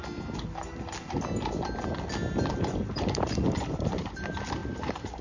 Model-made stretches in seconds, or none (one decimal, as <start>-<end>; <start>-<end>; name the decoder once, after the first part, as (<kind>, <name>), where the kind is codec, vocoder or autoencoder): 2.5-5.2 (vocoder, BigVGAN v2)